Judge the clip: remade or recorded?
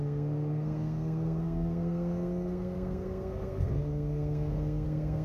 remade